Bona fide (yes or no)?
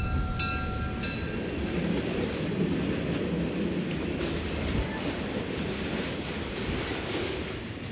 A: yes